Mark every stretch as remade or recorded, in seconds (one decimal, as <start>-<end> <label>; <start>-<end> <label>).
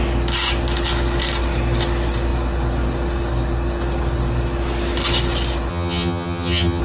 0.0-5.7 recorded; 5.7-6.8 remade